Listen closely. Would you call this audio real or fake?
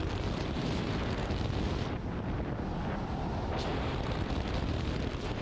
real